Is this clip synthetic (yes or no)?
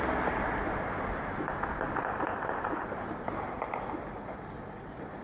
no